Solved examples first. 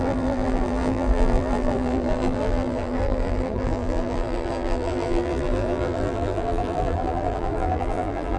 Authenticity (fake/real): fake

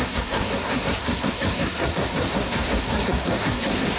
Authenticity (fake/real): fake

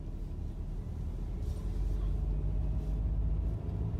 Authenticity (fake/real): real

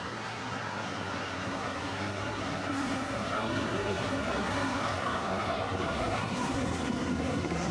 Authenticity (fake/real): fake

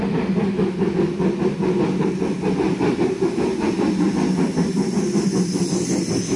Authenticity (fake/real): real